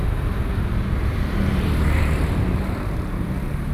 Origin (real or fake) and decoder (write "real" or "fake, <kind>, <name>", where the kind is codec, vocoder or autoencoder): fake, vocoder, BigVGAN v2